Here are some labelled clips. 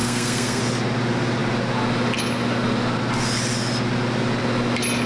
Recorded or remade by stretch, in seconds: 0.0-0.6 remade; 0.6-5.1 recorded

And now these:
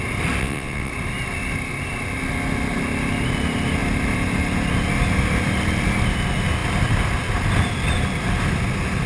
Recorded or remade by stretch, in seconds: 0.0-0.4 recorded; 0.4-0.9 remade; 0.9-9.1 recorded

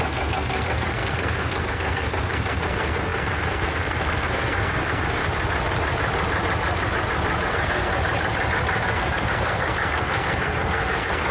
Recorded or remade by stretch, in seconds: 0.0-5.2 remade; 5.2-7.5 recorded; 7.5-7.9 remade; 7.9-8.9 recorded; 8.9-11.3 remade

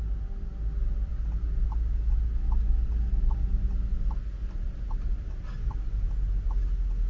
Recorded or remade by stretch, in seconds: 0.0-7.1 recorded

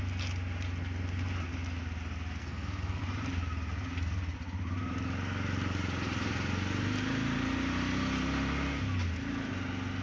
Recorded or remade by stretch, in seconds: 0.0-2.4 recorded; 2.4-3.0 remade; 3.0-10.0 recorded